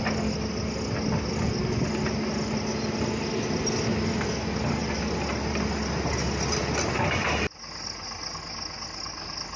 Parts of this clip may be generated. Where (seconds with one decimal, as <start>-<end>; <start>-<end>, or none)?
none